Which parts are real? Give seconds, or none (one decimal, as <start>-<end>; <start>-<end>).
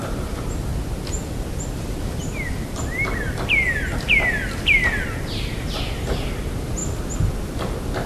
0.0-8.1